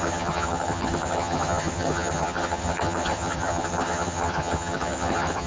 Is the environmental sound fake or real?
fake